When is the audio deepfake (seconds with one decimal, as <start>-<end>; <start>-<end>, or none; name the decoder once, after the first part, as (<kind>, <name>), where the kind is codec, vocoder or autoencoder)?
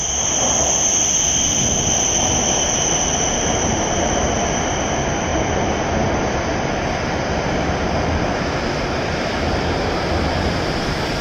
none